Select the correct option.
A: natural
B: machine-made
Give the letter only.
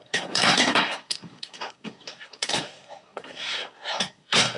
B